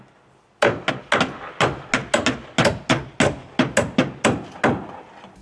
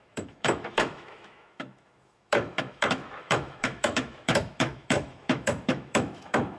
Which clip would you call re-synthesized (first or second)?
second